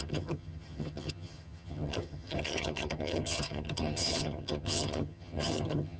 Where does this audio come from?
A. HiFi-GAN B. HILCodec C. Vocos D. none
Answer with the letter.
A